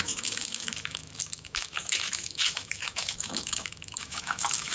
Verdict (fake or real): fake